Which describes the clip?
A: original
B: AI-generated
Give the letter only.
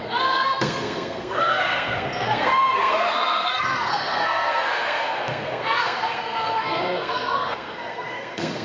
B